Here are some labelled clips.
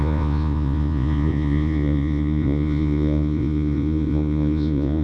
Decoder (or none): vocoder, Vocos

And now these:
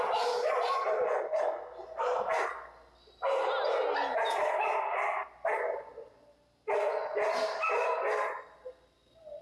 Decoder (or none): none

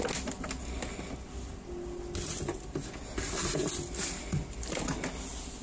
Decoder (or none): none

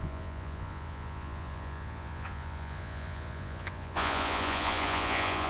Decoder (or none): vocoder, Vocos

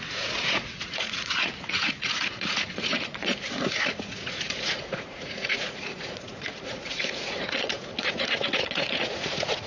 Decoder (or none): vocoder, Vocos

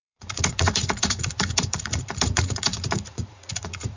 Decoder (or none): vocoder, Vocos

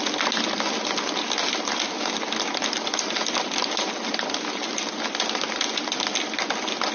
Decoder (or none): none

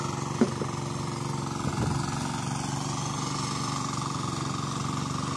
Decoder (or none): none